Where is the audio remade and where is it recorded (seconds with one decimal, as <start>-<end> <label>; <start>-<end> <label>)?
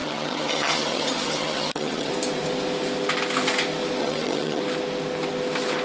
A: 0.0-2.1 remade; 2.1-4.0 recorded; 4.0-4.6 remade; 4.6-5.8 recorded